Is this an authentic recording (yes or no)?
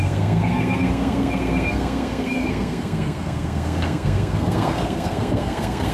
no